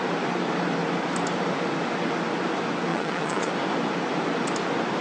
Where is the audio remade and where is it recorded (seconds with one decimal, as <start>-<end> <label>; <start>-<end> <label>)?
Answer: 0.0-2.9 recorded; 2.9-3.5 remade; 3.5-5.0 recorded